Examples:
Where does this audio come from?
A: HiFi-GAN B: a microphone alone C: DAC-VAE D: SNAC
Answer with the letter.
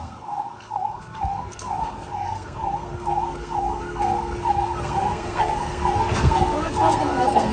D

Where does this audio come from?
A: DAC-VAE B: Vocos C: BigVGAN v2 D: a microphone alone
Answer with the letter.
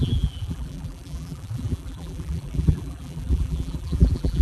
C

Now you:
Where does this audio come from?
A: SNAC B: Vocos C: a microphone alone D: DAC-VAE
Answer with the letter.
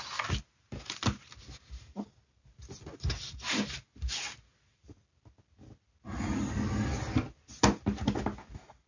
C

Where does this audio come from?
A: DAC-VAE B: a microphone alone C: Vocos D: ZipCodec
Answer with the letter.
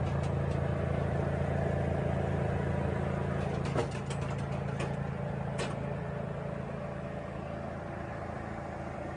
B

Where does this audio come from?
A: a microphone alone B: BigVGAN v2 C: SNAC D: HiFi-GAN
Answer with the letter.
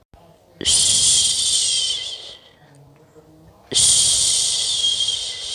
A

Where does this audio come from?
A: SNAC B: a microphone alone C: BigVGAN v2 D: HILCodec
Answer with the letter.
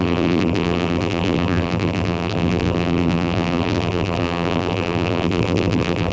C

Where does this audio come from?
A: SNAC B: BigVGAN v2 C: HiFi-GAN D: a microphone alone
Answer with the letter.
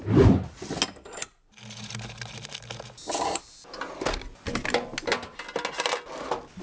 D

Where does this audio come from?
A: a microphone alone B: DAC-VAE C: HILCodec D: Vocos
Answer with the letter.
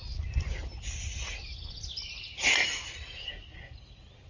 A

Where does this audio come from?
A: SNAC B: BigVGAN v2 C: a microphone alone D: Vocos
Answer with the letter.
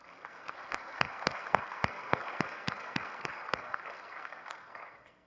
A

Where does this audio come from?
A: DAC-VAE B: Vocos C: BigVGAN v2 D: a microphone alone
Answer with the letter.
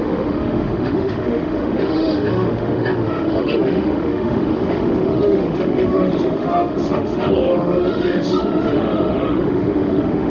A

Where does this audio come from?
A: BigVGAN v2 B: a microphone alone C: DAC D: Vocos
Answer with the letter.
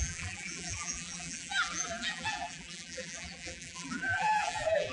A